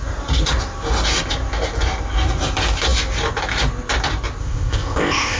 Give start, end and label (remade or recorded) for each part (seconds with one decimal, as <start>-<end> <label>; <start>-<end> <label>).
0.0-4.4 recorded; 4.4-5.4 remade